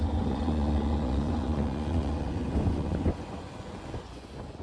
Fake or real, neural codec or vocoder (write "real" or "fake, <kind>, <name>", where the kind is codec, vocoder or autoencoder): fake, vocoder, Vocos